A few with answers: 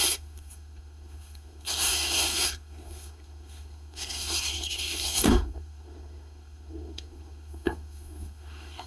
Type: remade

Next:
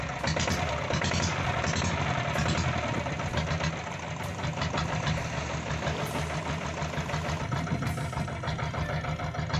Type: recorded